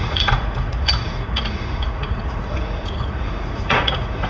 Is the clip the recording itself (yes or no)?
no